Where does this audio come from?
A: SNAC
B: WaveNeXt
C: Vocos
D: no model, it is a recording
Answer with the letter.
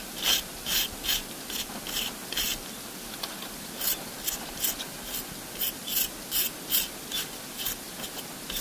D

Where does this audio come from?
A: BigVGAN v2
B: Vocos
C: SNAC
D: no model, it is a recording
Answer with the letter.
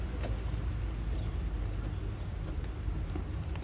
D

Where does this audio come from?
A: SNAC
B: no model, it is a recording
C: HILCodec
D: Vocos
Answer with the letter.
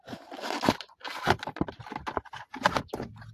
B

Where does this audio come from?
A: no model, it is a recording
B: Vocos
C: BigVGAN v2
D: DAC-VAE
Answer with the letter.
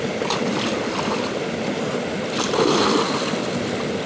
A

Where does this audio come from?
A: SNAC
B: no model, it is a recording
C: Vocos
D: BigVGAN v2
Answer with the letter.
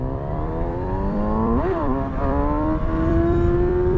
D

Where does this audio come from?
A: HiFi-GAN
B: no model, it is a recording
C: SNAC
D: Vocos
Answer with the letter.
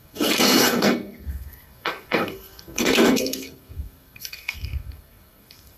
C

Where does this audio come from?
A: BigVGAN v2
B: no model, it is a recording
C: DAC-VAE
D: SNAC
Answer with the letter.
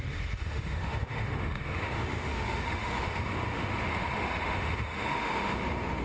C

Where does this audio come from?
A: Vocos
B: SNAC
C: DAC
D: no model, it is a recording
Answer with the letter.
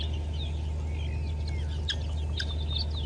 D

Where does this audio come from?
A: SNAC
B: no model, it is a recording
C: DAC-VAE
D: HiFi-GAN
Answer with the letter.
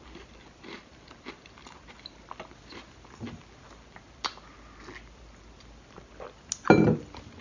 B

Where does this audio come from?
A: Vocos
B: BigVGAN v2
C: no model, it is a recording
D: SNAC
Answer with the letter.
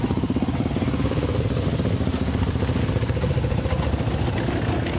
C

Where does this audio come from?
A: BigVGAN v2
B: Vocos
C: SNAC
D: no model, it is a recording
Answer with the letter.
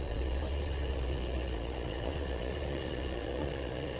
B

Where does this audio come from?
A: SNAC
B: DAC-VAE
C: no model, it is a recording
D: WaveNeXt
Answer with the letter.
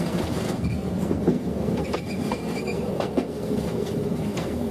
A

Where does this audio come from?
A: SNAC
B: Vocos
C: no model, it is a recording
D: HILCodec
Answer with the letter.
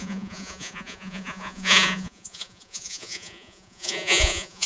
B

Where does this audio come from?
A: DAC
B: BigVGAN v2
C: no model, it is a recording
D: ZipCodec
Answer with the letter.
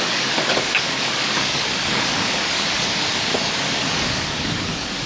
A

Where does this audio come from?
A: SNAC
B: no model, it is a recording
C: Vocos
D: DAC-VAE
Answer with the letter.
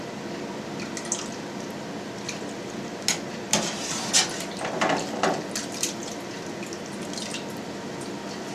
B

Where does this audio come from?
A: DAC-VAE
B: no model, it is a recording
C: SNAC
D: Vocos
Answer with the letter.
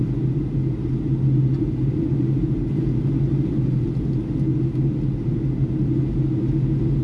B